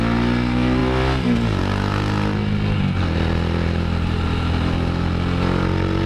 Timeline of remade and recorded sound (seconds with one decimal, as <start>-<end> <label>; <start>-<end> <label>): 0.0-6.1 recorded